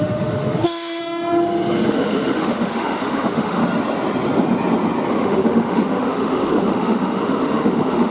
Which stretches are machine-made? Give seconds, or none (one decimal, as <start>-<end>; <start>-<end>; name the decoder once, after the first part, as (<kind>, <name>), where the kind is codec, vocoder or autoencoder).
0.0-1.0 (autoencoder, DAC-VAE); 1.9-3.6; 5.1-8.1